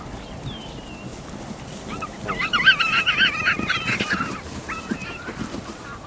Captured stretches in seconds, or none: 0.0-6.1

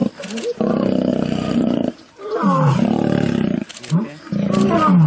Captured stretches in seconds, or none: 0.0-1.1; 4.2-5.1

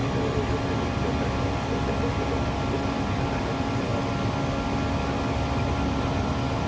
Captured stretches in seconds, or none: 0.0-0.5; 3.9-5.7

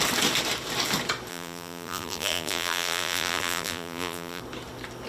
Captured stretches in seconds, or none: 0.0-1.3; 4.4-5.1

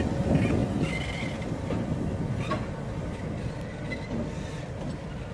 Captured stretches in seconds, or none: 0.0-5.3

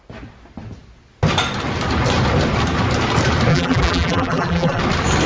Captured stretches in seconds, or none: 0.0-3.5; 4.8-5.3

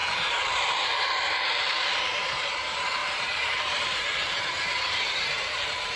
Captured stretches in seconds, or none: none

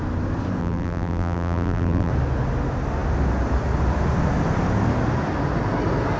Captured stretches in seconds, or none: 0.0-0.6; 2.1-6.2